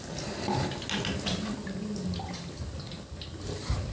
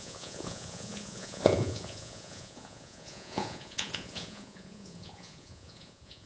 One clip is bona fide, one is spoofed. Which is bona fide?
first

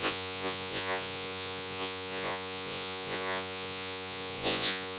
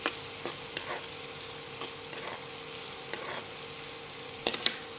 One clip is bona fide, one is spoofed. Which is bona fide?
second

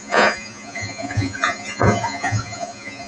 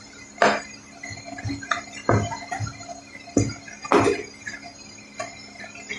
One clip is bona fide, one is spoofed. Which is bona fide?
second